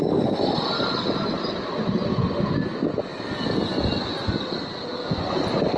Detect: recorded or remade recorded